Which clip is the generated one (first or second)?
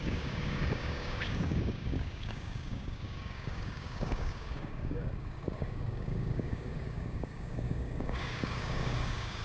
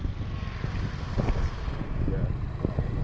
first